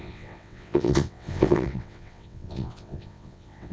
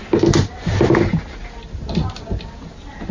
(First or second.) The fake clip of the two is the first